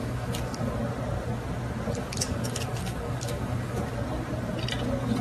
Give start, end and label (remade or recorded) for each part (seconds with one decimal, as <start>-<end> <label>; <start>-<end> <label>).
0.0-0.7 remade; 0.7-2.0 recorded; 2.0-3.9 remade; 3.9-5.2 recorded